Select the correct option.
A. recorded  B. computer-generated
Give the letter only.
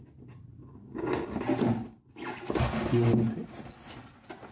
A